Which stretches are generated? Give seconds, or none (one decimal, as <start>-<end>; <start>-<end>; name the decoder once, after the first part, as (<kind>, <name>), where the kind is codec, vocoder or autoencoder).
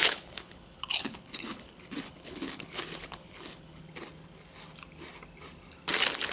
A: 0.0-3.8 (codec, HILCodec)